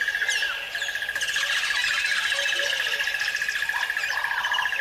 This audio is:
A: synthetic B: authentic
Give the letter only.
B